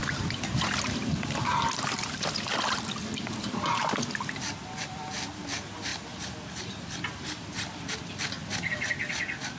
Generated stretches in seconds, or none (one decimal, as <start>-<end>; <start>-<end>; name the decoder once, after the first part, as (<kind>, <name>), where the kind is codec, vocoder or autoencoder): 0.0-5.2 (vocoder, BigVGAN v2); 8.4-8.9